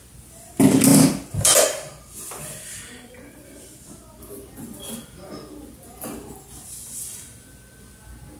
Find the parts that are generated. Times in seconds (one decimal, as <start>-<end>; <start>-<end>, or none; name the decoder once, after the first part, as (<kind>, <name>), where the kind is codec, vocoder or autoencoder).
0.9-4.2 (vocoder, BigVGAN v2)